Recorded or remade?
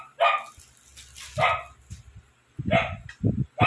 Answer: recorded